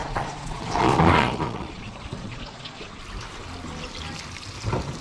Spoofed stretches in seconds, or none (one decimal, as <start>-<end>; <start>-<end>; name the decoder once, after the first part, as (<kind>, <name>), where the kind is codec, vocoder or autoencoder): 0.0-3.0 (vocoder, Vocos)